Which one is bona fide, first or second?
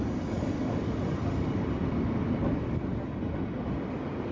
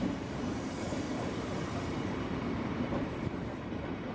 first